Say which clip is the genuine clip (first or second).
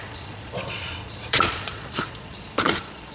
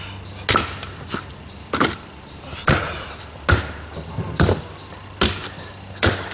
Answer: second